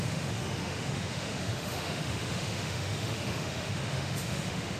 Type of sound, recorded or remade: remade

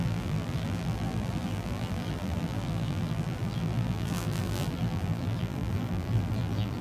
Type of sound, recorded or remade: remade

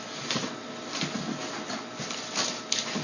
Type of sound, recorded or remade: recorded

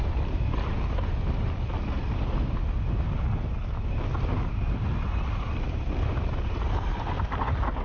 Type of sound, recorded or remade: recorded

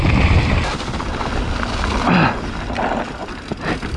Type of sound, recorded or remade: recorded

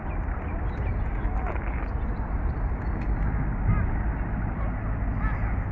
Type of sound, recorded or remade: recorded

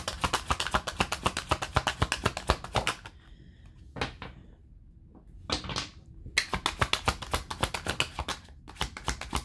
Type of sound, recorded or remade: recorded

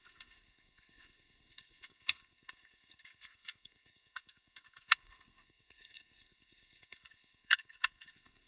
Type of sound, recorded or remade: remade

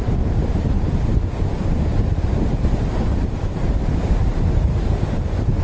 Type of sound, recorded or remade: remade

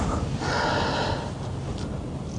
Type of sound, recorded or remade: recorded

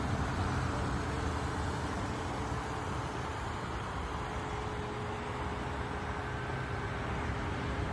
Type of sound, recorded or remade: recorded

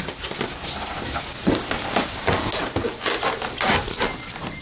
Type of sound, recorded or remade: recorded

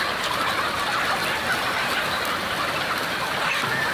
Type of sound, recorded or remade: recorded